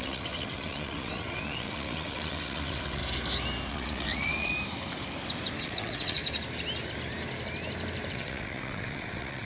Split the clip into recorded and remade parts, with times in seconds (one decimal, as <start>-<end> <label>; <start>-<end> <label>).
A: 0.0-3.0 remade; 3.0-3.7 recorded; 3.7-4.5 remade; 4.5-5.6 recorded; 5.6-6.2 remade; 6.2-8.1 recorded; 8.1-9.4 remade

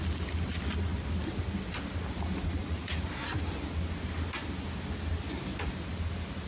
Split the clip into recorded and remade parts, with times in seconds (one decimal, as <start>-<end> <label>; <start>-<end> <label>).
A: 0.0-2.6 recorded; 2.6-3.1 remade; 3.1-6.5 recorded